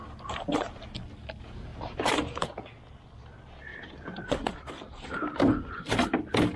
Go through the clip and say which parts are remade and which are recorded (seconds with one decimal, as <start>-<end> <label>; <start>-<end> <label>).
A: 0.0-0.8 remade; 0.8-1.7 recorded; 1.7-2.6 remade; 2.6-3.7 recorded; 3.7-4.7 remade; 4.7-6.6 recorded